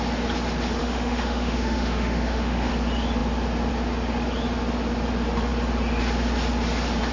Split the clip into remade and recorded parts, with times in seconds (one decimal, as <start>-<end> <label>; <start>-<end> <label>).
0.0-0.8 recorded; 0.8-2.7 remade; 2.7-7.1 recorded